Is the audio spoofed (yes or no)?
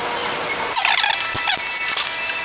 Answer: no